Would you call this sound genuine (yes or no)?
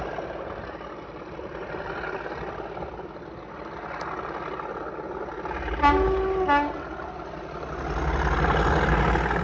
yes